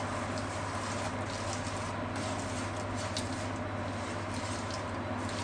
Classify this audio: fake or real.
real